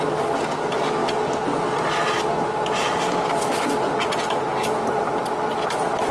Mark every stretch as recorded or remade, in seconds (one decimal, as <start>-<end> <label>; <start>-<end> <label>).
0.0-6.1 recorded